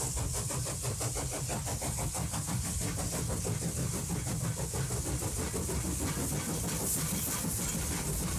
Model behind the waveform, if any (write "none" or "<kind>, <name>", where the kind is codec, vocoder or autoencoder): none